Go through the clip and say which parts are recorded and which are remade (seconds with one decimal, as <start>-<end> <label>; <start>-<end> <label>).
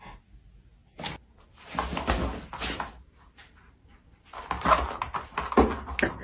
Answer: 0.0-6.2 recorded